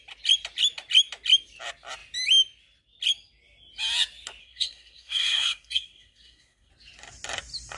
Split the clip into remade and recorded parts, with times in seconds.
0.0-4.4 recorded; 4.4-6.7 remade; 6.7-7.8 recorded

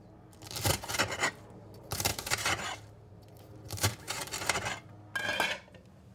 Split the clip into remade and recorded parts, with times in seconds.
0.0-0.7 recorded; 0.7-4.2 remade; 4.2-5.5 recorded; 5.5-6.1 remade

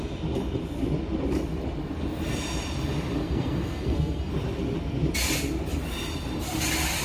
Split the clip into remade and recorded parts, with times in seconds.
0.0-3.2 recorded; 3.2-4.3 remade; 4.3-7.0 recorded

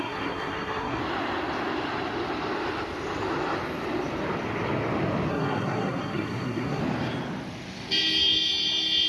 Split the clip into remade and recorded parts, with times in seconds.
0.0-1.0 remade; 1.0-5.3 recorded; 5.3-6.8 remade; 6.8-9.1 recorded

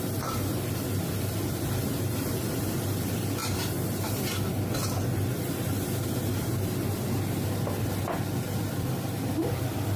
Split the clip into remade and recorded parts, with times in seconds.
0.0-4.5 remade; 4.5-8.4 recorded; 8.4-10.0 remade

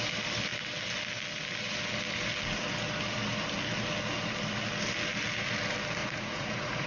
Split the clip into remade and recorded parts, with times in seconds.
0.0-6.0 recorded; 6.0-6.9 remade

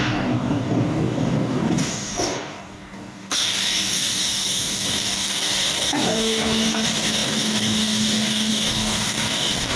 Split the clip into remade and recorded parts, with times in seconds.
0.0-9.8 remade